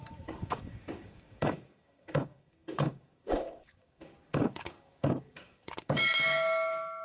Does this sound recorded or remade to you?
remade